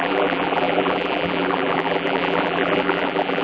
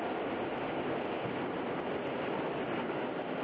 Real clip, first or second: second